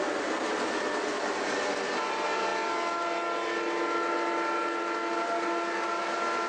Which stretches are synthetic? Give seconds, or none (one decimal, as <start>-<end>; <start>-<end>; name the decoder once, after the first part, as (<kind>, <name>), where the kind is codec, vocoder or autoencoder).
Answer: none